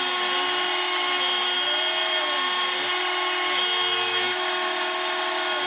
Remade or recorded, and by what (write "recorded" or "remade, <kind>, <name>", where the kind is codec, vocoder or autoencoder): recorded